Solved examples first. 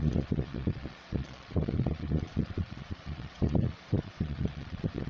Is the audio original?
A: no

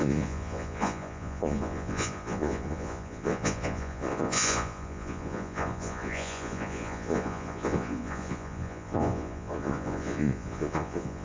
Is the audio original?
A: no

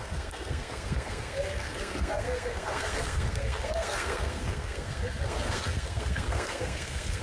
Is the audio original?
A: no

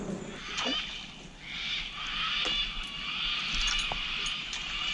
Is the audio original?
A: yes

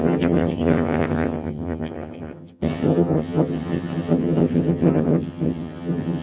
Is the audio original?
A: no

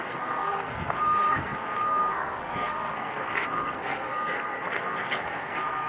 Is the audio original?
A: no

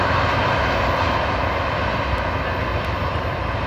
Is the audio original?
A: yes